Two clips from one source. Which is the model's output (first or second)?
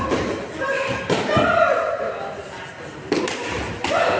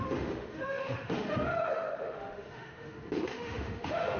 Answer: second